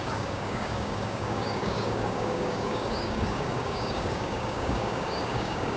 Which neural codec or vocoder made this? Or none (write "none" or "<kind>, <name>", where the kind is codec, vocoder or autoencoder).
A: codec, DAC